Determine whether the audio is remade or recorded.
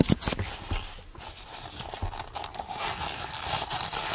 recorded